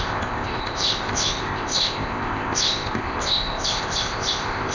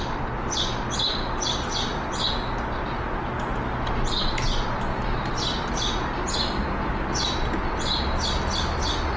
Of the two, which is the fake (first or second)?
first